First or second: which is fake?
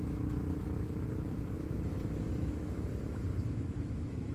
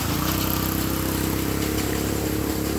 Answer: first